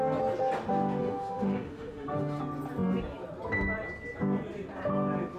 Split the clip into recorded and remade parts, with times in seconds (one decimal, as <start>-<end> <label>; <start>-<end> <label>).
0.0-1.0 recorded; 1.0-2.4 remade; 2.4-5.4 recorded